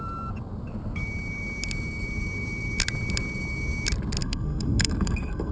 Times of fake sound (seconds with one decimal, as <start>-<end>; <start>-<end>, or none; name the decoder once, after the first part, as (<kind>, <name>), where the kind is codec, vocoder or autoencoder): 4.2-5.5 (codec, SNAC)